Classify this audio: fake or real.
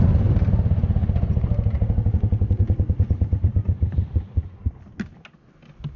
real